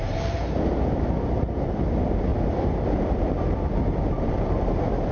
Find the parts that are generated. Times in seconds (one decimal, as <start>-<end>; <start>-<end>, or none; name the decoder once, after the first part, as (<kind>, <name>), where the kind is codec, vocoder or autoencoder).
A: 2.3-5.1 (vocoder, BigVGAN v2)